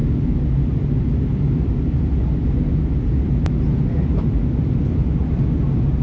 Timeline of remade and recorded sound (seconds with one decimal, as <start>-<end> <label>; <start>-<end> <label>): 0.0-5.2 recorded; 5.2-6.0 remade